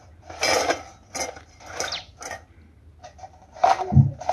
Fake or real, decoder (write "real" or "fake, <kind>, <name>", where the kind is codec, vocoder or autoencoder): real